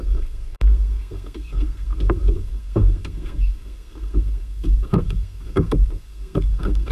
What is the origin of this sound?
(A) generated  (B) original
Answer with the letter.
A